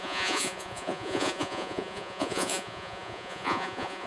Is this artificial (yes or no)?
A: yes